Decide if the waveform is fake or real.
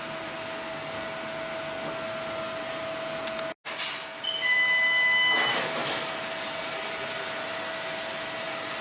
real